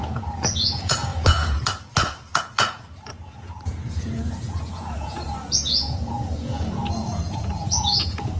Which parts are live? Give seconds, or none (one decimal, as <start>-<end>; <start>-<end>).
none